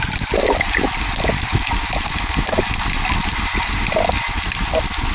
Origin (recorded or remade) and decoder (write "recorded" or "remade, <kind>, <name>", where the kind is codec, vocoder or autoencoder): recorded